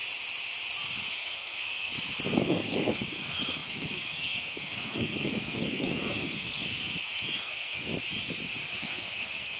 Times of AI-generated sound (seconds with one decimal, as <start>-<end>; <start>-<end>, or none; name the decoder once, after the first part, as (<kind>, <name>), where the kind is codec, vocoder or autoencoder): 1.1-1.9 (codec, SNAC); 2.4-7.9; 8.8-9.6